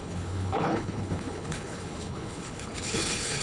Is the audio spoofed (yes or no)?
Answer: yes